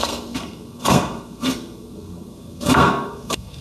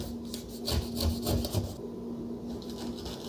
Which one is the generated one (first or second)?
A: first